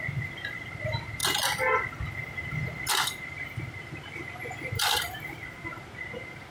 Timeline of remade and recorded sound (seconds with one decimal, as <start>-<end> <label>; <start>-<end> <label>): 0.0-1.2 remade; 1.2-2.9 recorded; 2.9-6.5 remade